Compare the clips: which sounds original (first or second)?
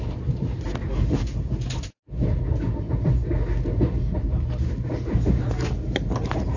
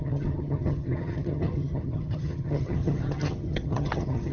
first